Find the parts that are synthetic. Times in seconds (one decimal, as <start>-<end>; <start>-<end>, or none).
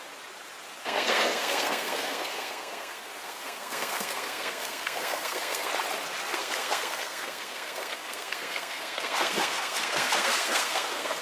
0.8-5.7; 6.3-11.2